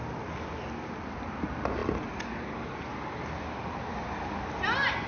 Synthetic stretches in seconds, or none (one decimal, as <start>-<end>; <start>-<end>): none